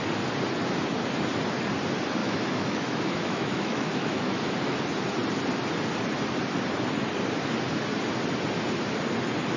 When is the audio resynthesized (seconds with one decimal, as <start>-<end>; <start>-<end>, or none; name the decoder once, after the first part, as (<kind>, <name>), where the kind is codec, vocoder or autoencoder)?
2.2-4.4 (autoencoder, DAC-VAE)